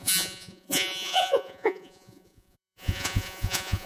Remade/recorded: remade